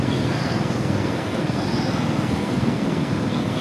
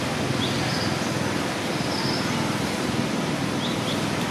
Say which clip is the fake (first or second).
first